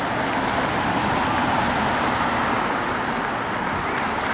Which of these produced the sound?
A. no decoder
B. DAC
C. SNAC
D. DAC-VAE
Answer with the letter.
A